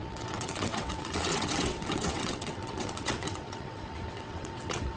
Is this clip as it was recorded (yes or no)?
no